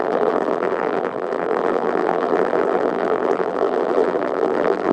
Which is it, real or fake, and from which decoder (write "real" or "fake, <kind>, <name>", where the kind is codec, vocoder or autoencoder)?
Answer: fake, vocoder, BigVGAN v2